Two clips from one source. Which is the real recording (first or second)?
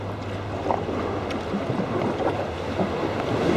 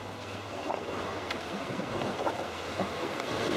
first